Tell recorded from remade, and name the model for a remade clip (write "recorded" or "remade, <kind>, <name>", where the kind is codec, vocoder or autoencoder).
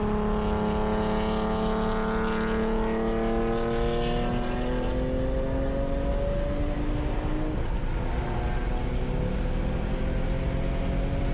recorded